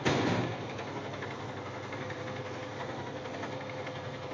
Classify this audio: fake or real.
fake